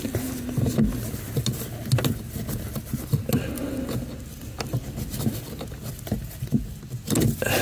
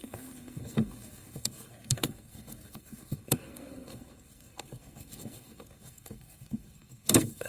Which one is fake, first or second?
second